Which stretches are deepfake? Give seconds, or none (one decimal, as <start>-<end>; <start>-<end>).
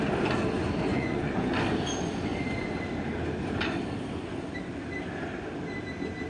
0.9-1.5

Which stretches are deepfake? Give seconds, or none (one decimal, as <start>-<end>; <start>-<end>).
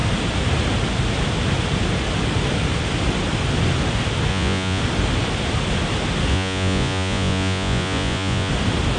4.3-4.8; 6.3-8.5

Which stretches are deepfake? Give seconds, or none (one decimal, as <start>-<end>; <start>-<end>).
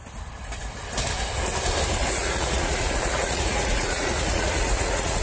2.0-5.2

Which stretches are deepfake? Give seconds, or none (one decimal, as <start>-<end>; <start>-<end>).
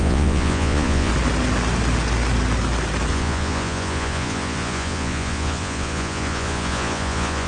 0.0-1.1; 3.1-7.5